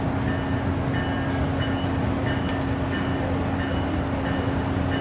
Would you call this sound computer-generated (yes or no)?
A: no